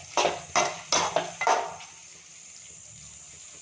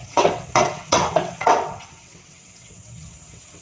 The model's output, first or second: second